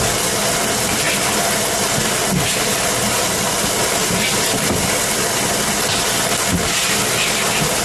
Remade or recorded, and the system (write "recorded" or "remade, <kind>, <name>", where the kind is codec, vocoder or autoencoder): recorded